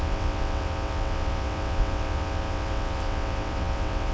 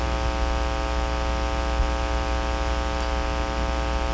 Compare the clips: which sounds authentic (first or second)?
second